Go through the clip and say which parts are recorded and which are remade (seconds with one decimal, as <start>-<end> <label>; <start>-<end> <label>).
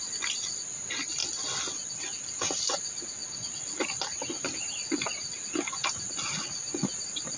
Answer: 0.0-7.4 recorded